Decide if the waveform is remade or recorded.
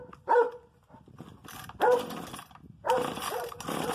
recorded